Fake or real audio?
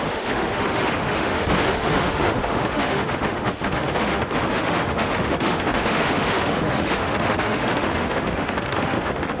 fake